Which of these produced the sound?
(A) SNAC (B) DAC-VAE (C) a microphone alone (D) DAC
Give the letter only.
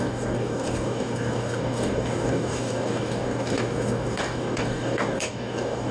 D